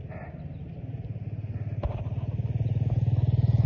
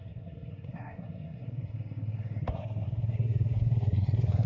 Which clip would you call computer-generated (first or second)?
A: second